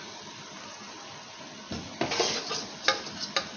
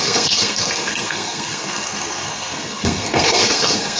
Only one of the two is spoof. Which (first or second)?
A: second